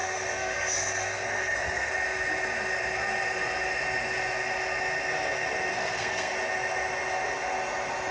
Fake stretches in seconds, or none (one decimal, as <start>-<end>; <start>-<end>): 0.0-1.9; 5.7-6.3

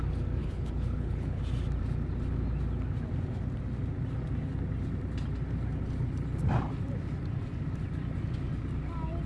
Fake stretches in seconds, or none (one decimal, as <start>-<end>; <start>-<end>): 0.4-1.4

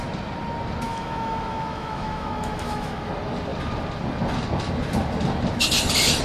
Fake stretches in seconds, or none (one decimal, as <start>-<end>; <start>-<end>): 0.9-3.1

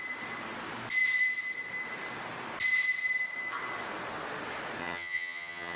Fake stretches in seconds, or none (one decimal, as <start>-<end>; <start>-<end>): 4.8-5.8